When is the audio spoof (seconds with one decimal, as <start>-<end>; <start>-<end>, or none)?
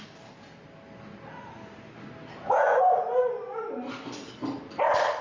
none